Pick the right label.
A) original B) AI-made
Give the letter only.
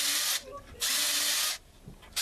A